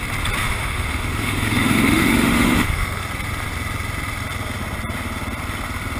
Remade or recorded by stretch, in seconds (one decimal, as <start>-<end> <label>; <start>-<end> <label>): 0.0-0.4 recorded; 0.4-3.0 remade; 3.0-6.0 recorded

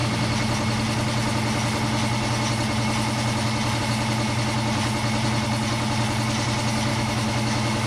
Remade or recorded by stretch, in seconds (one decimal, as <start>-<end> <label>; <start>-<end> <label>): 0.0-6.9 recorded; 6.9-7.9 remade

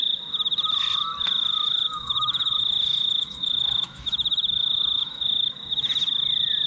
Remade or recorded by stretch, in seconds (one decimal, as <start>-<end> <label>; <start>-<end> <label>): 0.0-1.5 recorded; 1.5-5.5 remade; 5.5-6.7 recorded

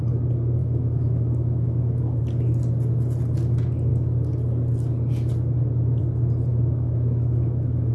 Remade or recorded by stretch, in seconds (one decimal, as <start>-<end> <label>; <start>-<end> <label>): 0.0-0.6 recorded; 0.6-2.2 remade; 2.2-6.5 recorded; 6.5-7.9 remade

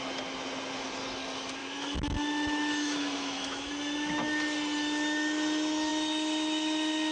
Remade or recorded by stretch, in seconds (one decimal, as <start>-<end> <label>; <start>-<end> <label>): 0.0-1.6 recorded; 1.6-3.7 remade; 3.7-7.1 recorded

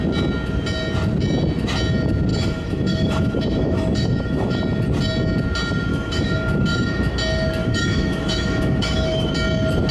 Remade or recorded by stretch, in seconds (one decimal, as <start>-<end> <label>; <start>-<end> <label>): 0.0-2.3 recorded; 2.3-4.6 remade; 4.6-5.9 recorded; 5.9-7.1 remade; 7.1-7.6 recorded; 7.6-9.3 remade; 9.3-9.9 recorded

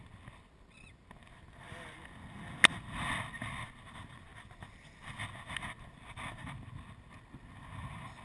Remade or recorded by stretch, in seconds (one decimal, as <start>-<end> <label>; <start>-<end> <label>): 0.0-8.2 recorded

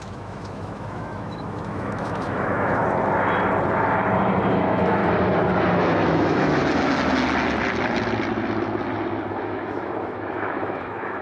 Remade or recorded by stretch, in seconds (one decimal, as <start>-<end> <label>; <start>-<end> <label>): 0.0-2.8 remade; 2.8-4.5 recorded; 4.5-5.0 remade; 5.0-5.8 recorded; 5.8-6.6 remade; 6.6-9.3 recorded; 9.3-11.2 remade